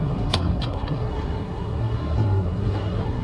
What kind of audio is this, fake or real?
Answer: fake